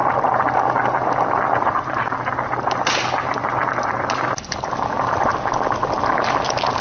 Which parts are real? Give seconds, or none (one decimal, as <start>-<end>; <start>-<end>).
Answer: 0.0-6.8